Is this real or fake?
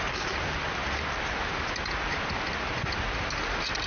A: real